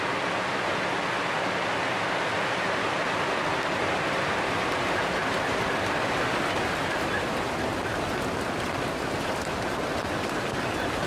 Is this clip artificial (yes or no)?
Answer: no